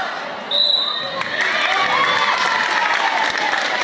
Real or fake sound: real